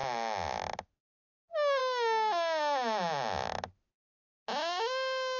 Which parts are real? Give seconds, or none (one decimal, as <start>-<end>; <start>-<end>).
0.0-5.4

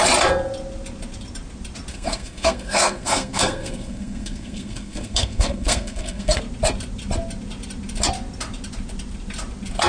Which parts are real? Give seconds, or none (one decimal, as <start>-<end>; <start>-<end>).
0.0-1.9; 6.4-9.9

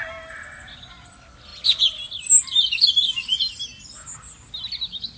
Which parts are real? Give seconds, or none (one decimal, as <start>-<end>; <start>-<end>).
0.0-5.2

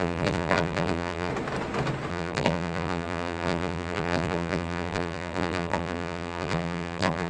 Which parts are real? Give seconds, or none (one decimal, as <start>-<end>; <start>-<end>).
1.3-2.1

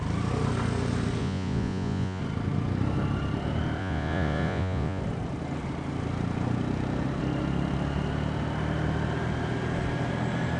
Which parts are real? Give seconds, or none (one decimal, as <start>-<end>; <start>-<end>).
0.0-1.2; 2.2-3.8; 5.0-10.6